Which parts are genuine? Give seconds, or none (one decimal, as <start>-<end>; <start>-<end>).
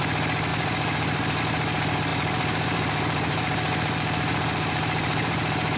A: 0.0-0.5; 1.4-2.1